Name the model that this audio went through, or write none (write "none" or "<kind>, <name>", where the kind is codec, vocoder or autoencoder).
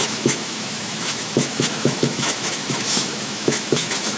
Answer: autoencoder, DAC-VAE